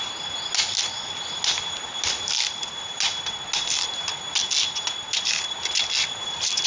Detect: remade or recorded recorded